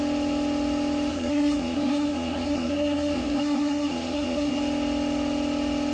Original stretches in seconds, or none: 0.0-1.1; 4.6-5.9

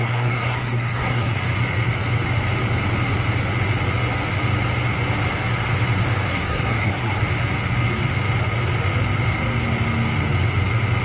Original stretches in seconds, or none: 1.4-6.3; 7.2-11.0

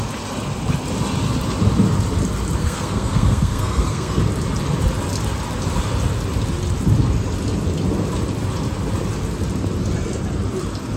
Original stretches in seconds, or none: 0.0-2.6; 4.2-11.0